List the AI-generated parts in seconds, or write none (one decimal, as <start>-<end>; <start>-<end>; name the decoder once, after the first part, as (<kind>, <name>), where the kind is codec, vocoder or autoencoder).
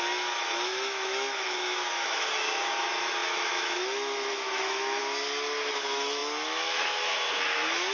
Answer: 0.0-5.0 (autoencoder, DAC-VAE); 5.7-7.9